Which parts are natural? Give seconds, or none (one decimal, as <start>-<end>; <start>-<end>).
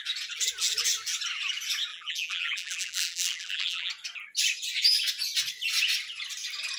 0.0-1.9; 3.9-6.8